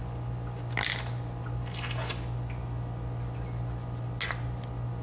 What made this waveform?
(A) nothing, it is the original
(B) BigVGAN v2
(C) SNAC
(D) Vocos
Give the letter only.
A